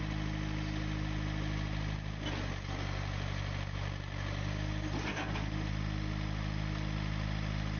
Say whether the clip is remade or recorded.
recorded